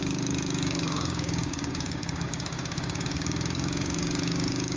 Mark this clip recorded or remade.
remade